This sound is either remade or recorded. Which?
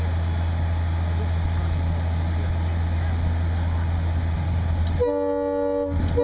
recorded